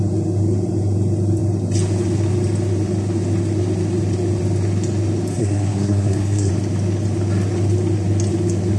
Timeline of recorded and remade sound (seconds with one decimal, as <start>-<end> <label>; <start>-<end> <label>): 0.0-5.3 recorded; 5.3-6.5 remade; 6.5-8.8 recorded

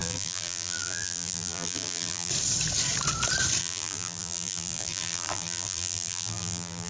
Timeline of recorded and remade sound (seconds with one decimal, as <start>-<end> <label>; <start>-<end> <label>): 0.0-2.3 remade; 2.3-3.6 recorded; 3.6-6.9 remade

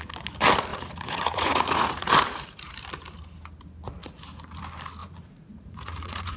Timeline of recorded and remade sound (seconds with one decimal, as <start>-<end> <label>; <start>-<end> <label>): 0.0-0.7 recorded; 0.7-2.1 remade; 2.1-5.0 recorded; 5.0-6.4 remade

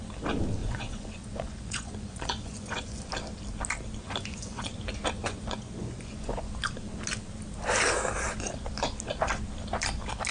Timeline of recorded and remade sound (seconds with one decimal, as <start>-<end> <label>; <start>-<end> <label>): 0.0-0.6 recorded; 0.6-3.0 remade; 3.0-4.0 recorded; 4.0-4.7 remade; 4.7-5.2 recorded; 5.2-6.5 remade; 6.5-10.3 recorded

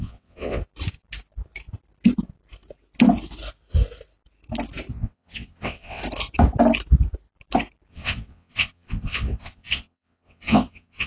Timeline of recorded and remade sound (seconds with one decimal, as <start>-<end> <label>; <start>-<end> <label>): 0.0-0.6 remade; 0.6-4.9 recorded; 4.9-6.0 remade; 6.0-7.9 recorded; 7.9-11.1 remade

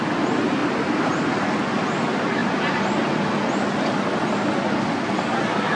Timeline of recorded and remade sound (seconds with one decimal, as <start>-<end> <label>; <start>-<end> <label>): 0.0-0.6 recorded; 0.6-1.2 remade; 1.2-5.8 recorded

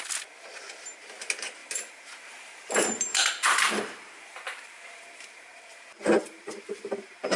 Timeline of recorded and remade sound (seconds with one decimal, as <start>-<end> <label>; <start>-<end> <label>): 0.0-1.6 recorded; 1.6-5.6 remade; 5.6-6.2 recorded; 6.2-7.4 remade